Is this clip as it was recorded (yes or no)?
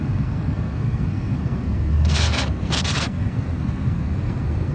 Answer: no